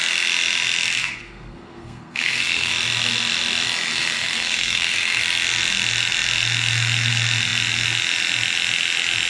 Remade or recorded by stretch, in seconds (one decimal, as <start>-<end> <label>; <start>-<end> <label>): 0.0-1.0 recorded; 1.0-2.7 remade; 2.7-3.9 recorded; 3.9-5.2 remade; 5.2-9.3 recorded